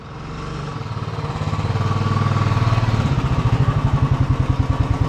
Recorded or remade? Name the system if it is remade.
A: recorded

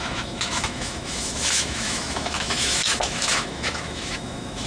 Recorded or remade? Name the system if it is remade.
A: remade, autoencoder, DAC-VAE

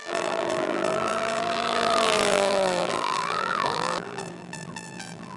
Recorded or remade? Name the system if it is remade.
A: remade, vocoder, BigVGAN v2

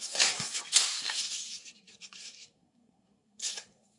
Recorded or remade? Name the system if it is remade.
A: remade, codec, SNAC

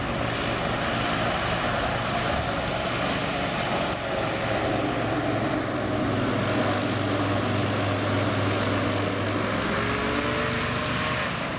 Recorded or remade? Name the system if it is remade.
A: recorded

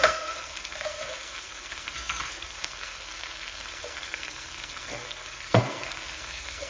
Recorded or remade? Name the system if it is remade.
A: remade, codec, SNAC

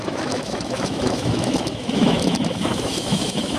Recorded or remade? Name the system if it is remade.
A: remade, autoencoder, DAC-VAE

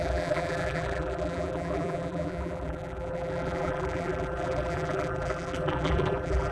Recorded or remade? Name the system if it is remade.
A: remade, vocoder, BigVGAN v2